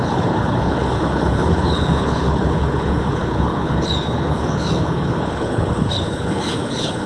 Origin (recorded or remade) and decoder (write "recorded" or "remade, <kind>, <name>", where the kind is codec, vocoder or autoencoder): remade, codec, HILCodec